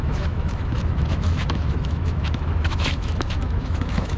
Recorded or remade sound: remade